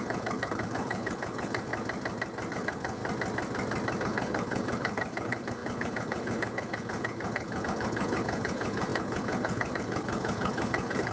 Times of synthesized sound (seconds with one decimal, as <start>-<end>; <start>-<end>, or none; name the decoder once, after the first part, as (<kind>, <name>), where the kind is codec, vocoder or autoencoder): 0.0-1.7 (codec, HILCodec); 2.5-3.0; 4.0-11.1